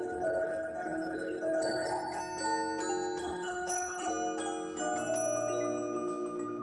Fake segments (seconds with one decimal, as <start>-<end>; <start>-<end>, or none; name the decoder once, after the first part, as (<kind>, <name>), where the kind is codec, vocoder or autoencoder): 0.0-2.2 (codec, HILCodec); 3.2-4.1